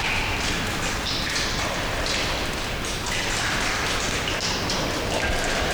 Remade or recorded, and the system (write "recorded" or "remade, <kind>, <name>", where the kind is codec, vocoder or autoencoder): recorded